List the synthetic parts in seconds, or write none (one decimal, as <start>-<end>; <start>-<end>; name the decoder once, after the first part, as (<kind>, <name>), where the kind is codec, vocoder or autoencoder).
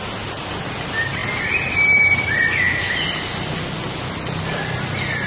none